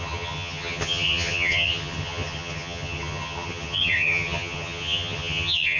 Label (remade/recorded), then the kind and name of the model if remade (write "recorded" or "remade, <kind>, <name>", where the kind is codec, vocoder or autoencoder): remade, vocoder, HiFi-GAN